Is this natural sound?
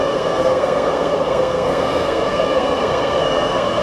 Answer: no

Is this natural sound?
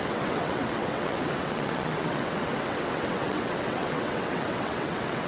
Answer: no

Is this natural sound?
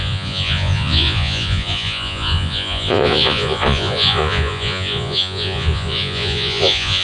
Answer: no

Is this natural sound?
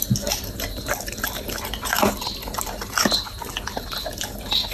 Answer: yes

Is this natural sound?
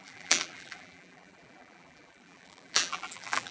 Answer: no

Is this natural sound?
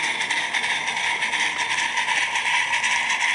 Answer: yes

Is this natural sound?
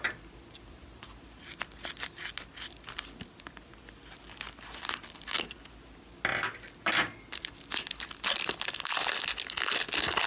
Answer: yes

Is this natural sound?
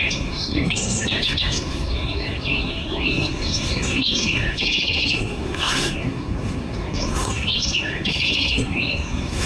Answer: no